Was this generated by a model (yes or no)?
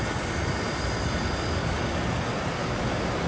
no